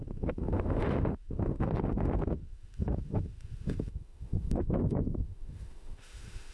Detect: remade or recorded remade